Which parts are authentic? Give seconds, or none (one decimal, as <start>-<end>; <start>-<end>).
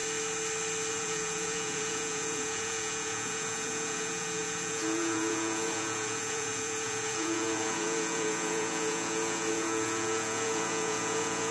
0.0-0.9